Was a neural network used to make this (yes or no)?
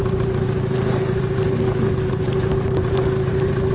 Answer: no